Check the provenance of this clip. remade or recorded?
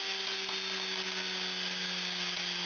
recorded